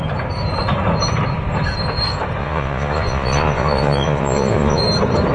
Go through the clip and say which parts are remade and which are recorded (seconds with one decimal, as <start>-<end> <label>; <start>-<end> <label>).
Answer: 0.0-2.4 recorded; 2.4-4.8 remade; 4.8-5.3 recorded

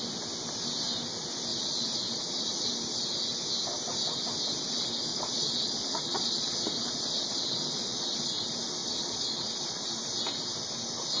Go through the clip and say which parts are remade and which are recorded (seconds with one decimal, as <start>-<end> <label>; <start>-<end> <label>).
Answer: 0.0-1.5 recorded; 1.5-2.7 remade; 2.7-5.1 recorded; 5.1-8.3 remade; 8.3-8.8 recorded; 8.8-10.0 remade; 10.0-11.2 recorded

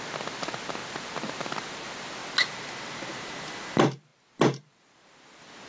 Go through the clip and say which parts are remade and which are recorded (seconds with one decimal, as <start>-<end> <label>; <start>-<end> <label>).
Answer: 0.0-5.7 recorded

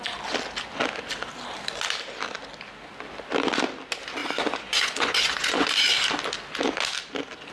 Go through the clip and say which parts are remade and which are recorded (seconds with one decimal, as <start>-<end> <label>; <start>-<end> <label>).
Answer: 0.0-4.2 recorded; 4.2-5.7 remade; 5.7-7.5 recorded

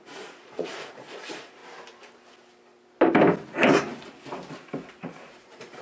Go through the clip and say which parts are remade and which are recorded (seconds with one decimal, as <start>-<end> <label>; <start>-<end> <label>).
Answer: 0.0-1.6 remade; 1.6-5.0 recorded; 5.0-5.8 remade

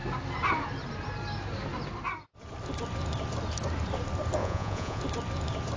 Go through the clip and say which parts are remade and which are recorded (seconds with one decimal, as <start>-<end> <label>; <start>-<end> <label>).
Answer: 0.0-4.4 recorded; 4.4-5.0 remade; 5.0-5.8 recorded